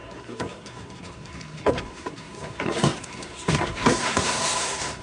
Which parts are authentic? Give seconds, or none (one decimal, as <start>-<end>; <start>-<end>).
none